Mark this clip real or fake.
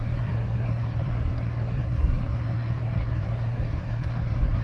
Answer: fake